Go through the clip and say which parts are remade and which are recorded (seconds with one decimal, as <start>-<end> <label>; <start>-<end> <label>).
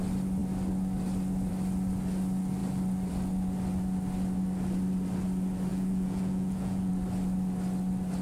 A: 0.0-5.7 recorded; 5.7-6.9 remade; 6.9-8.2 recorded